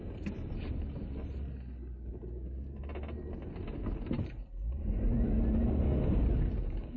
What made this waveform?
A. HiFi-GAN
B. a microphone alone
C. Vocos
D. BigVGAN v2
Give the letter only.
B